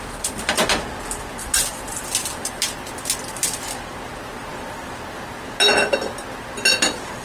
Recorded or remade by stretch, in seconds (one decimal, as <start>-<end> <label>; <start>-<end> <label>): 0.0-1.4 recorded; 1.4-2.9 remade; 2.9-7.2 recorded